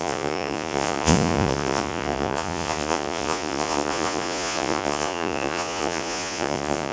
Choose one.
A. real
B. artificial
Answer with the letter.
B